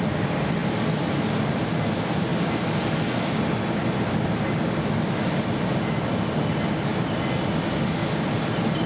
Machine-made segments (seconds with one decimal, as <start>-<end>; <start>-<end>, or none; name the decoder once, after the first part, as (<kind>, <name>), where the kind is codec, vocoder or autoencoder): none